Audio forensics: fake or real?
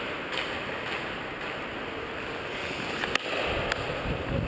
real